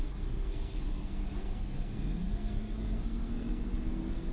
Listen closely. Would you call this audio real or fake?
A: fake